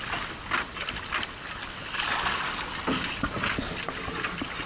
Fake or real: real